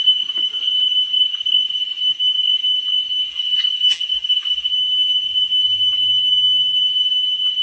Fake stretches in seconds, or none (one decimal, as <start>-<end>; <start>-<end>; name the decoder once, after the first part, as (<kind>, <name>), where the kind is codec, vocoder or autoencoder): 3.3-4.7 (vocoder, BigVGAN v2)